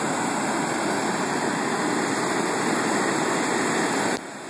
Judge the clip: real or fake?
real